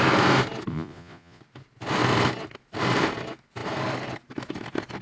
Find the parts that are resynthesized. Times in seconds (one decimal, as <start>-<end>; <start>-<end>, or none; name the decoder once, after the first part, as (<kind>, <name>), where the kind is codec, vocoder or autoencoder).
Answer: 0.7-1.4 (vocoder, Vocos)